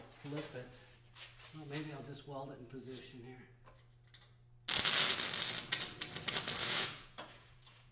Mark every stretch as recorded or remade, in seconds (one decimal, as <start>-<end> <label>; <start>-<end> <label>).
0.0-6.6 recorded; 6.6-7.9 remade